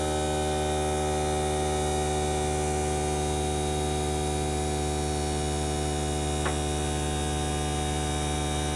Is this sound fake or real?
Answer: real